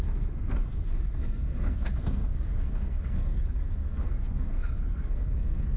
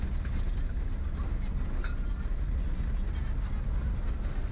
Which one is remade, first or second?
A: first